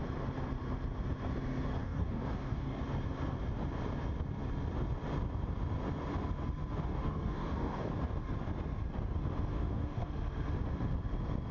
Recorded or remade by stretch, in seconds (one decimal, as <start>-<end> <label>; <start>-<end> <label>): 0.0-1.8 recorded; 1.8-2.8 remade; 2.8-6.9 recorded; 6.9-7.9 remade; 7.9-9.5 recorded; 9.5-10.1 remade; 10.1-11.5 recorded